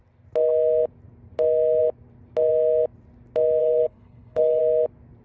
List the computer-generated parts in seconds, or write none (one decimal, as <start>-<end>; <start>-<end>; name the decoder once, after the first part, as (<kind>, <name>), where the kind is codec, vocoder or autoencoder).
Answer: 3.6-4.6 (codec, HILCodec)